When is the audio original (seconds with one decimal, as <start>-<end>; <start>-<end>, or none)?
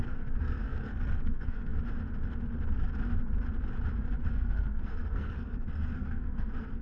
1.7-4.3